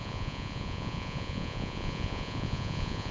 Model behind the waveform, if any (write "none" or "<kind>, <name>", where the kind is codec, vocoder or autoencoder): vocoder, Vocos